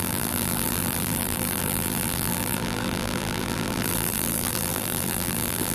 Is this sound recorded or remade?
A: remade